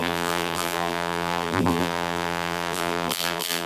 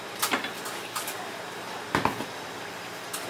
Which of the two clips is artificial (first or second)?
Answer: first